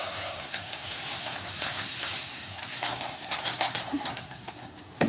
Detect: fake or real fake